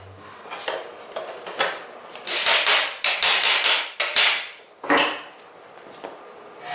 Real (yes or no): yes